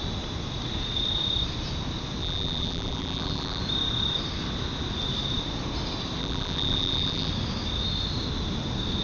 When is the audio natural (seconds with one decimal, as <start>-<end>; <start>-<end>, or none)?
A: 0.0-2.2; 3.6-6.2; 7.3-9.0